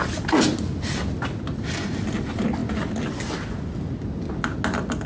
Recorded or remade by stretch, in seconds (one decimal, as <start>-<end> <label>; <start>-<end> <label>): 0.0-5.1 recorded